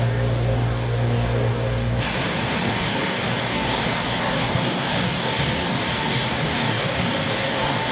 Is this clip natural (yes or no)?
no